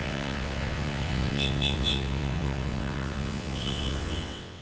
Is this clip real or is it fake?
fake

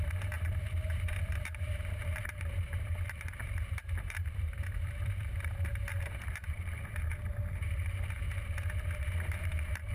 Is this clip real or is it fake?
fake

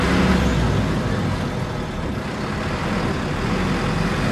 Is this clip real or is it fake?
real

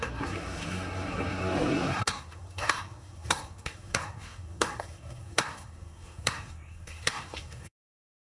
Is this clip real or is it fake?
fake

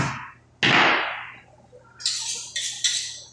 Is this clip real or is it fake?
real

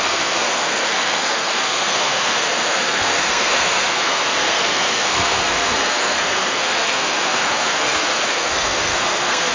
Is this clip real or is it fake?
fake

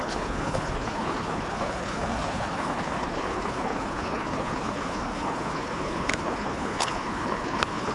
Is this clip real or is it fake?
fake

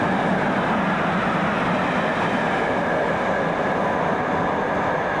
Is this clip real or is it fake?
real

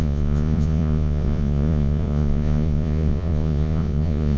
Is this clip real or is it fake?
fake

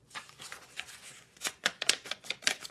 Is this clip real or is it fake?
fake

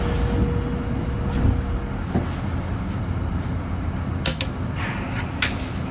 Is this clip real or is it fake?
real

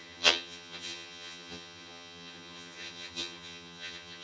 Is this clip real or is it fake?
fake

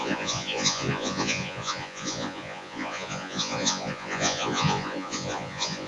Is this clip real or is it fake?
fake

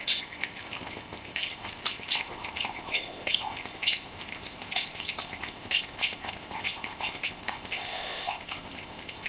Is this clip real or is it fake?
fake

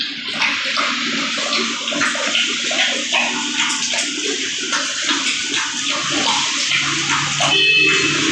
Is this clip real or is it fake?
real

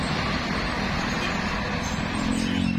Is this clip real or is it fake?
real